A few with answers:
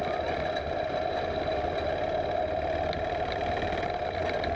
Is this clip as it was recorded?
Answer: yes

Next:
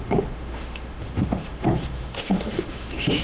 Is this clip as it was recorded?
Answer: no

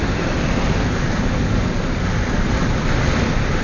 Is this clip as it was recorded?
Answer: yes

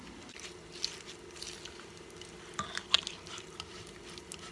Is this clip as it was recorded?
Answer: yes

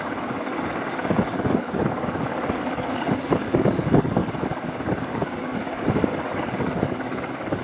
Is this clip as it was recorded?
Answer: no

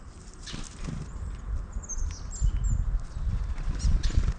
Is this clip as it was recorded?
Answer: yes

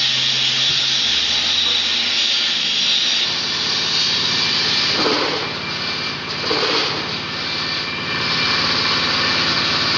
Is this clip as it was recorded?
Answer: yes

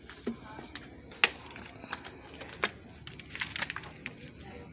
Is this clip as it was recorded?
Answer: yes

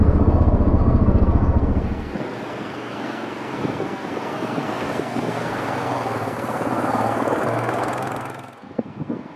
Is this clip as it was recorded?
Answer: no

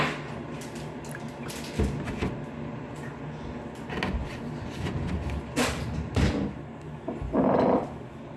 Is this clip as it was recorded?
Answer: yes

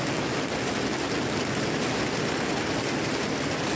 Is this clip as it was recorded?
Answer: yes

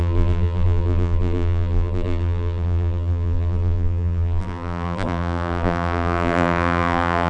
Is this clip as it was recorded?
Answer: no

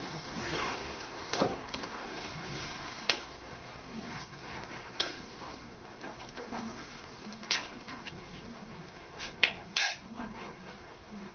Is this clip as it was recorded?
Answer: no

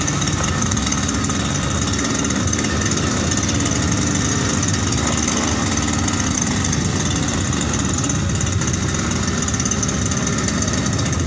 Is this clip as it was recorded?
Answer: yes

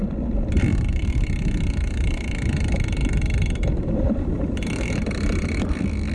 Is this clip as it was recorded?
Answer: no